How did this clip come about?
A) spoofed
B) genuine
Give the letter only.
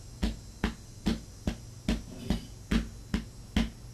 B